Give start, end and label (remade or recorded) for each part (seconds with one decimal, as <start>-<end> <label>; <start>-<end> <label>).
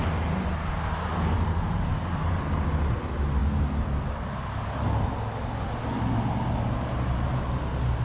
0.0-8.0 recorded